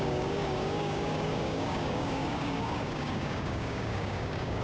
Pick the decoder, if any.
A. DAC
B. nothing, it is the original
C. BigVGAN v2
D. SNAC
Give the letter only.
A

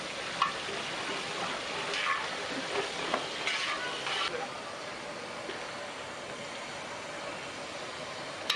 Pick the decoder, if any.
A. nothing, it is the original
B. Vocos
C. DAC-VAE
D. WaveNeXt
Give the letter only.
A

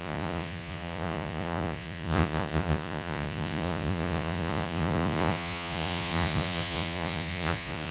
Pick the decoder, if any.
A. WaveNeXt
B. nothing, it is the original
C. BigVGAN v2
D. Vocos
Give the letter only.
D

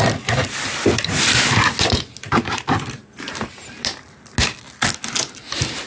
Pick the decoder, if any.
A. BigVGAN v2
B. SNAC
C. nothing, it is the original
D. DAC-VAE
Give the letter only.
C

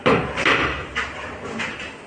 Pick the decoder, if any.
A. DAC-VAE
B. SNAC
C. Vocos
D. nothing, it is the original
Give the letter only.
D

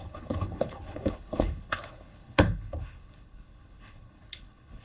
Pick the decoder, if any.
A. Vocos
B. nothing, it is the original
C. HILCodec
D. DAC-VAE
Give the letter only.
C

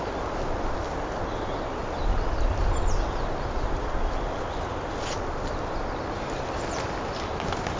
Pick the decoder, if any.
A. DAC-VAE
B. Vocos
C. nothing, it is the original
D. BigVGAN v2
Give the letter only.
C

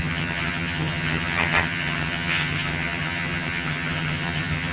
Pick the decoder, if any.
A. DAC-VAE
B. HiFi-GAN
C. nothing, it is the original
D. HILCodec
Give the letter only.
B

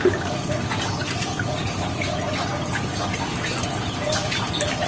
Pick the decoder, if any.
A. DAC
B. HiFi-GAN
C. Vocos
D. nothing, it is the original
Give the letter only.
D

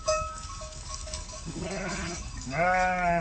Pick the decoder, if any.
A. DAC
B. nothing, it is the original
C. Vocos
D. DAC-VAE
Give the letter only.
A